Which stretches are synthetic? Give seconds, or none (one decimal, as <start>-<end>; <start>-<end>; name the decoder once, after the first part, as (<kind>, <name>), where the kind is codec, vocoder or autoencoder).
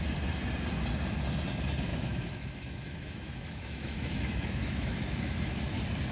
1.9-5.6 (autoencoder, DAC-VAE)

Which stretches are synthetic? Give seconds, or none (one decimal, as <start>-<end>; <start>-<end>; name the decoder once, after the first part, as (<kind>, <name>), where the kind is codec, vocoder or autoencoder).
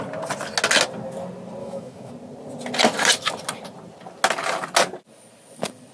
1.6-2.1 (autoencoder, DAC-VAE)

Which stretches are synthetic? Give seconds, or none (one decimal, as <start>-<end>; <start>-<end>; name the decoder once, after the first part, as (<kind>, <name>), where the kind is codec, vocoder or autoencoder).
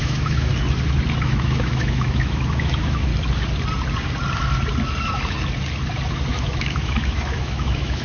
0.0-0.5 (autoencoder, DAC-VAE); 1.2-3.1; 6.3-8.0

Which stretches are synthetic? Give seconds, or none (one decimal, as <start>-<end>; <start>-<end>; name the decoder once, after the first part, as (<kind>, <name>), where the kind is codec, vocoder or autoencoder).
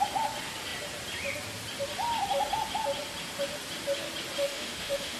4.4-5.2 (autoencoder, DAC-VAE)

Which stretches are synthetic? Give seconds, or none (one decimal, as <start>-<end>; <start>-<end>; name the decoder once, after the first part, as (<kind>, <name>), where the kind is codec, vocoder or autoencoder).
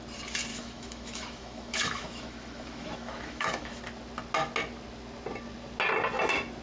0.5-3.8 (autoencoder, DAC-VAE)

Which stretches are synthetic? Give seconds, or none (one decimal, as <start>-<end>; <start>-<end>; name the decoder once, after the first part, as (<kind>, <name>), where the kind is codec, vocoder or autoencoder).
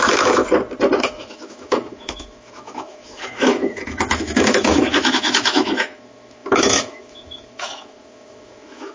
0.0-0.4 (autoencoder, DAC-VAE); 1.0-8.9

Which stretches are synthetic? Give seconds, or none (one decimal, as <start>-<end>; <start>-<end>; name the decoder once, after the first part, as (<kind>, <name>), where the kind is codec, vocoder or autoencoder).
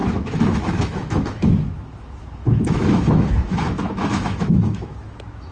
0.0-5.5 (autoencoder, DAC-VAE)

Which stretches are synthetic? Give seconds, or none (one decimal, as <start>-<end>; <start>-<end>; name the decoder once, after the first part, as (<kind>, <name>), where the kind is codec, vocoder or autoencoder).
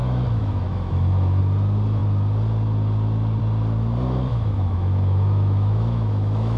0.0-1.4 (autoencoder, DAC-VAE); 4.3-6.6